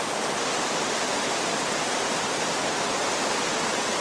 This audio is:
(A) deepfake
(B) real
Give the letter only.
B